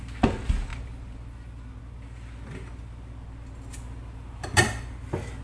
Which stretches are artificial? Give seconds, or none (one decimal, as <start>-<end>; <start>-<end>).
none